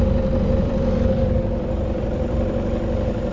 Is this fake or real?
fake